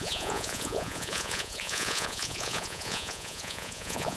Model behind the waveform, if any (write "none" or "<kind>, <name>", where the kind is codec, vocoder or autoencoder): vocoder, Vocos